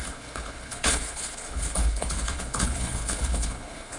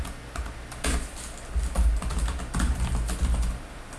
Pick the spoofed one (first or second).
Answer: first